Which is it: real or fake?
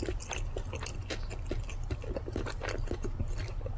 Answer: real